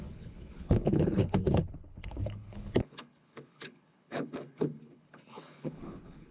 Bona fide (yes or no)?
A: no